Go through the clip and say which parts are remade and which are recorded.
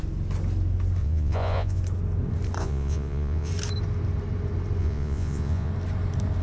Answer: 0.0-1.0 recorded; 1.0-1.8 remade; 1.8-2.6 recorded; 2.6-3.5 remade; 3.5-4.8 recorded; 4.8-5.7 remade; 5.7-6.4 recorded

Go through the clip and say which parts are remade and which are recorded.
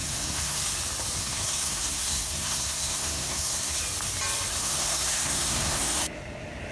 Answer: 0.0-0.6 remade; 0.6-1.2 recorded; 1.2-3.8 remade; 3.8-4.6 recorded; 4.6-6.0 remade; 6.0-6.7 recorded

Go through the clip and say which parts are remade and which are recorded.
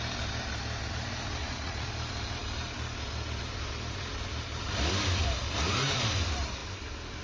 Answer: 0.0-1.4 recorded; 1.4-1.9 remade; 1.9-7.2 recorded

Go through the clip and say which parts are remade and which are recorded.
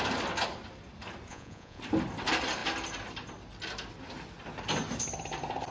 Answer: 0.0-1.3 recorded; 1.3-1.8 remade; 1.8-5.7 recorded